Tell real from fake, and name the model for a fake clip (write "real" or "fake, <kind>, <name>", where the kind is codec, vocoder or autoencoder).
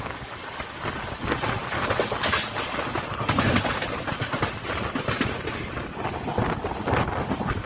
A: real